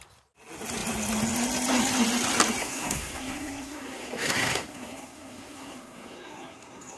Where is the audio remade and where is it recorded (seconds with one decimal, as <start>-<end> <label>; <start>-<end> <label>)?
0.0-2.6 recorded; 2.6-7.0 remade